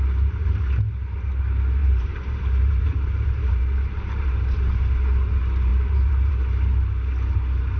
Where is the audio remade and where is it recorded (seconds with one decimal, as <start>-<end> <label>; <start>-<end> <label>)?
0.0-1.8 recorded; 1.8-4.3 remade; 4.3-5.7 recorded; 5.7-6.3 remade; 6.3-7.8 recorded